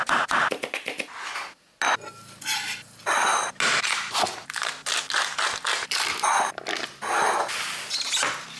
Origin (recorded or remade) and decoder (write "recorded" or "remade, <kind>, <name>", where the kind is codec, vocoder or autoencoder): recorded